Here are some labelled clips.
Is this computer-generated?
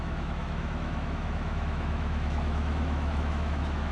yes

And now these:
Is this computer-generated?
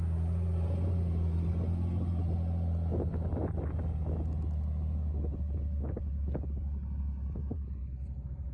no